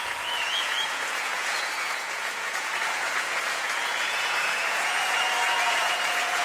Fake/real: fake